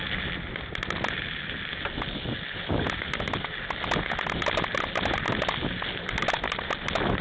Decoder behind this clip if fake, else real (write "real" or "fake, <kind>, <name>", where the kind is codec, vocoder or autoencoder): real